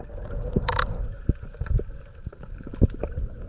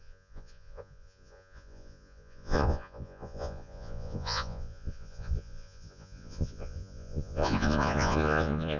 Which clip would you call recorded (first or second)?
first